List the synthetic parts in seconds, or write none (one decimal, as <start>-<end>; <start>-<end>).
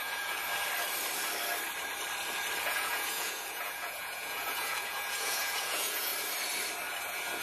0.0-0.4; 2.6-6.1; 7.0-7.4